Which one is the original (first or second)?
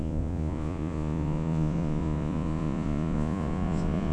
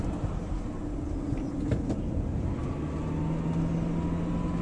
second